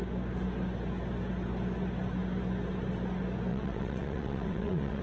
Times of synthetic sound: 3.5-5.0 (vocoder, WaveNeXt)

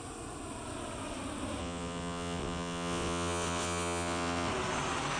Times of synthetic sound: 1.6-4.5 (vocoder, WaveNeXt)

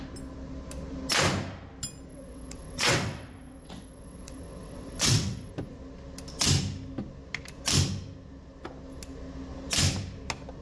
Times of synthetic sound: 2.1-5.5 (vocoder, WaveNeXt)

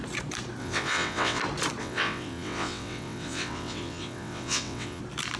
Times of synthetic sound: 0.6-1.4 (vocoder, WaveNeXt); 1.8-5.0

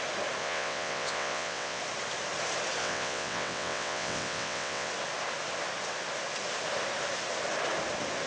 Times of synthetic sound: 0.4-1.8 (vocoder, WaveNeXt); 2.8-4.9

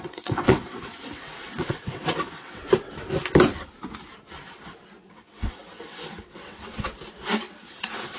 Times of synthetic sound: 0.0-2.6 (vocoder, WaveNeXt); 5.1-6.9; 7.6-8.2